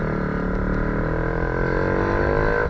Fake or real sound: real